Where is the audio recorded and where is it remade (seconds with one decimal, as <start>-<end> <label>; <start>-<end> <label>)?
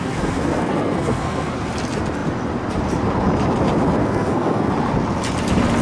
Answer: 0.0-1.5 remade; 1.5-4.0 recorded; 4.0-4.7 remade; 4.7-5.8 recorded